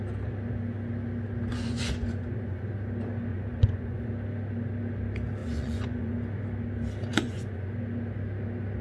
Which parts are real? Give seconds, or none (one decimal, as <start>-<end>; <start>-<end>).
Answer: 0.0-1.5; 2.6-3.3; 4.1-5.4; 6.2-7.1; 7.7-8.8